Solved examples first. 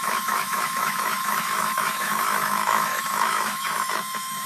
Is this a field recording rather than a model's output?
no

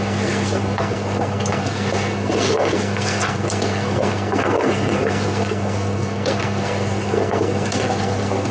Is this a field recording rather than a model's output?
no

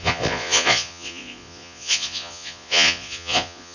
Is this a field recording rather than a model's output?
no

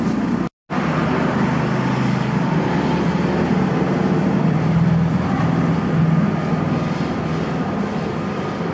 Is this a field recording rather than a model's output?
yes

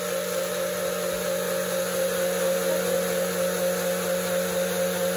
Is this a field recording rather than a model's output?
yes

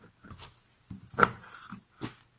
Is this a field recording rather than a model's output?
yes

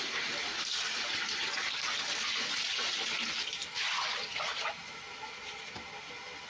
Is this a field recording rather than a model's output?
yes